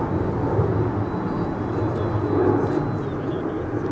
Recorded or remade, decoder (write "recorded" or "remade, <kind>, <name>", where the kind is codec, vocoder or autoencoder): recorded